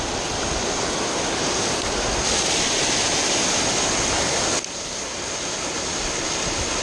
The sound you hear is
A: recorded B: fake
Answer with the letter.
A